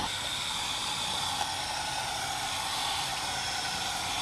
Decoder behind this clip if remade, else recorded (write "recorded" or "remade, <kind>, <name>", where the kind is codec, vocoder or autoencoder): recorded